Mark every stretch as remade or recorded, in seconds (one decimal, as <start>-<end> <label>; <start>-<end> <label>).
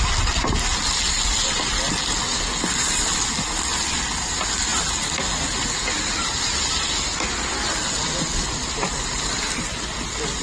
0.0-10.4 recorded